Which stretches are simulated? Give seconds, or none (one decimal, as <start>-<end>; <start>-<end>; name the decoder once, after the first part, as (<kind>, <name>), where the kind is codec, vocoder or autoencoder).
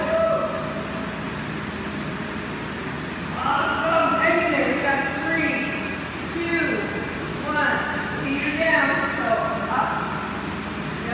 7.3-8.8 (autoencoder, DAC-VAE)